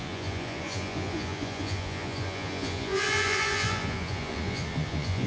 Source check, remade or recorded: remade